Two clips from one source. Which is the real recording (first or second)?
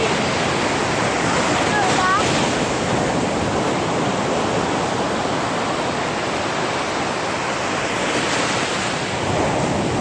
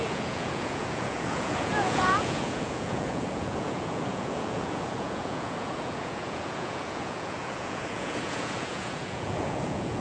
first